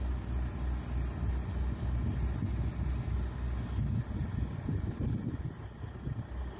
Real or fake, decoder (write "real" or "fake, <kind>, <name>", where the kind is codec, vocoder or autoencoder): real